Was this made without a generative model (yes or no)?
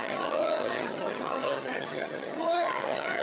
no